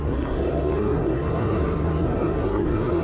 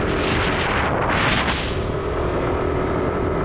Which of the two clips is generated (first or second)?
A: first